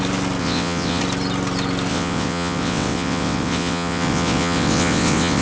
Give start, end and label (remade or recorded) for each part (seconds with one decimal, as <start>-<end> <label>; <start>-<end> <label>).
0.0-0.4 recorded; 0.4-1.0 remade; 1.0-1.9 recorded; 1.9-5.4 remade